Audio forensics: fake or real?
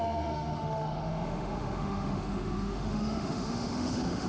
fake